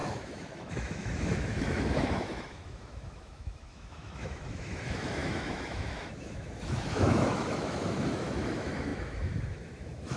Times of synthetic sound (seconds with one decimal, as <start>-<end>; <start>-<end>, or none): 0.0-10.2